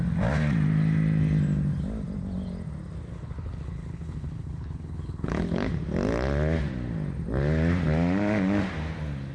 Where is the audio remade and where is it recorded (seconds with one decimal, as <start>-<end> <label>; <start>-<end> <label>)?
0.0-3.1 recorded; 3.1-5.7 remade; 5.7-9.3 recorded